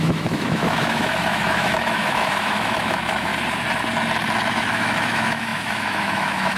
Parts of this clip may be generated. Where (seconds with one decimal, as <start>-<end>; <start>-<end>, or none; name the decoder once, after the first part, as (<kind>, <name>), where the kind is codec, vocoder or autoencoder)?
0.0-3.3 (autoencoder, DAC-VAE); 4.5-6.6